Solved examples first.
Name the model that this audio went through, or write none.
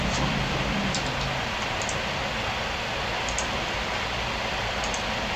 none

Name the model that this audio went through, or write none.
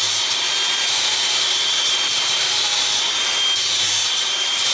vocoder, BigVGAN v2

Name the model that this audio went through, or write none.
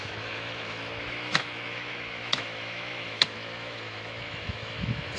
autoencoder, DAC-VAE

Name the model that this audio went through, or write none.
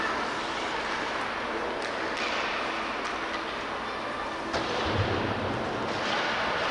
none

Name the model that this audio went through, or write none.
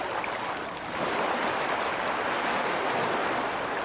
none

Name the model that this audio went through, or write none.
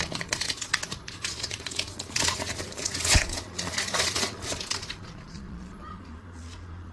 vocoder, Vocos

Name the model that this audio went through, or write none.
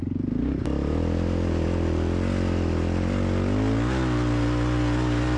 none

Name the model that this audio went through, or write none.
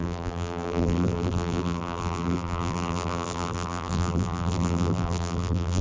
vocoder, BigVGAN v2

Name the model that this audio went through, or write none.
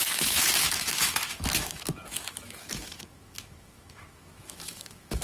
autoencoder, DAC-VAE